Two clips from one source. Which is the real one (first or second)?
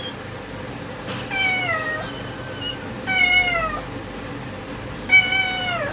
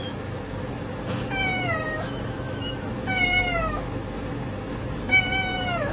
first